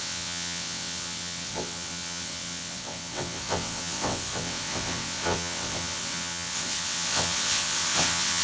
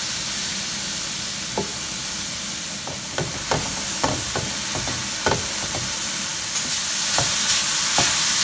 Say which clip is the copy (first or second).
first